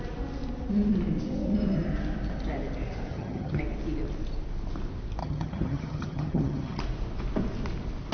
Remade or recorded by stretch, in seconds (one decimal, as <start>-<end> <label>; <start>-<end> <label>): 0.0-3.1 recorded; 3.1-3.6 remade; 3.6-5.2 recorded; 5.2-6.8 remade; 6.8-8.1 recorded